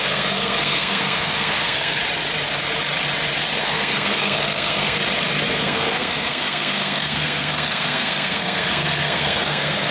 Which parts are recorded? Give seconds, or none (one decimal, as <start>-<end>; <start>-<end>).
2.0-3.6; 5.0-5.5